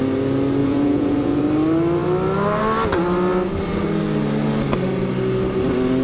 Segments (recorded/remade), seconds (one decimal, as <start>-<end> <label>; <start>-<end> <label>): 0.0-0.6 recorded; 0.6-1.4 remade; 1.4-6.0 recorded